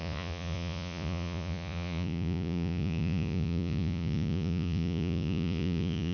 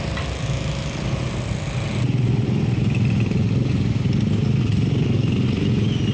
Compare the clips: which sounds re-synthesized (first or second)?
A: first